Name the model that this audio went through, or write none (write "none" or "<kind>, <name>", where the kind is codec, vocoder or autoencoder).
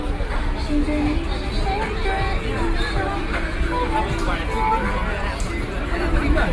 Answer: none